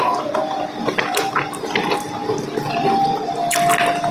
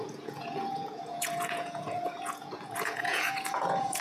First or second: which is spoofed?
second